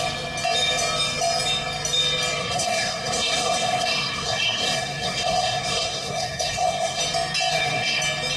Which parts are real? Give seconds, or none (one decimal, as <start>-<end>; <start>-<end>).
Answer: 0.0-2.4; 7.0-7.5; 8.0-8.4

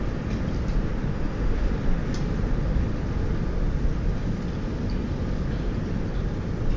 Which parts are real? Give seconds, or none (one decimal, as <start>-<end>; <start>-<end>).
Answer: 0.0-1.1; 1.7-6.8

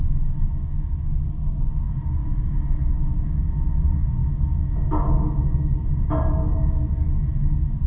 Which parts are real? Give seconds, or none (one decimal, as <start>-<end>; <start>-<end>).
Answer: 0.0-2.2; 3.3-7.9

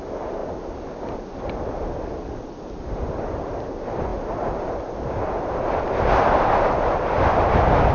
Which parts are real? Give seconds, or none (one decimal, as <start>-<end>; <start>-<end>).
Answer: 0.0-7.9